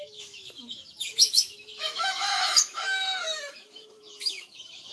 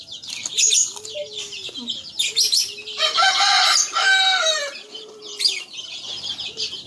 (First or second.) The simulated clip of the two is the first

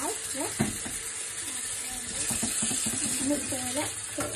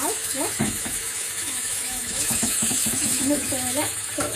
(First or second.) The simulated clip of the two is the second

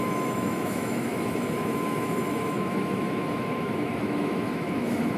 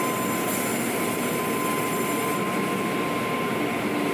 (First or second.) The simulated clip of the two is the first